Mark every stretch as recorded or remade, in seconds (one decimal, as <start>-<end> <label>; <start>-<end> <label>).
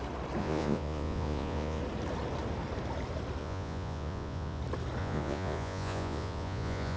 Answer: 0.0-0.4 recorded; 0.4-1.8 remade; 1.8-3.4 recorded; 3.4-4.6 remade; 4.6-5.0 recorded; 5.0-7.0 remade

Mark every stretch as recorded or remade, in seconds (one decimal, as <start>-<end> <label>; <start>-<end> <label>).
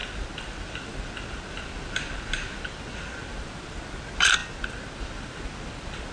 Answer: 0.0-6.1 recorded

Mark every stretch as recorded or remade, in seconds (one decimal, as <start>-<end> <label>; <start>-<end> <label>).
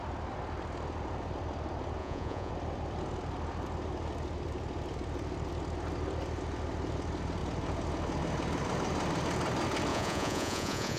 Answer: 0.0-2.0 recorded; 2.0-2.5 remade; 2.5-9.9 recorded; 9.9-11.0 remade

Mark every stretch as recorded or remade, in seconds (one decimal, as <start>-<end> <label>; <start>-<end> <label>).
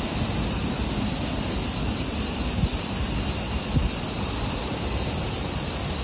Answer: 0.0-6.0 recorded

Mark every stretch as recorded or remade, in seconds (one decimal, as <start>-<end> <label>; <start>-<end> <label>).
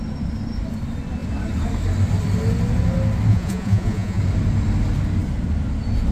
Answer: 0.0-3.3 recorded; 3.3-4.2 remade; 4.2-6.1 recorded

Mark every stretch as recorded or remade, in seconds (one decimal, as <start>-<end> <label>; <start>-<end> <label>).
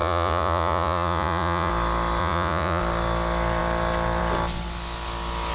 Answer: 0.0-1.7 remade; 1.7-2.2 recorded; 2.2-2.8 remade; 2.8-5.5 recorded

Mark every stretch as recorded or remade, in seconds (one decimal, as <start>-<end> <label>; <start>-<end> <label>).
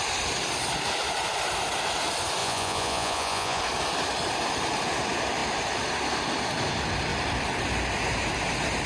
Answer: 0.0-2.4 recorded; 2.4-3.6 remade; 3.6-8.9 recorded